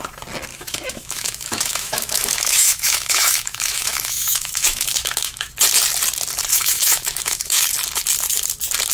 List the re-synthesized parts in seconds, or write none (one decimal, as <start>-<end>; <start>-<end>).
0.5-5.5; 6.5-7.7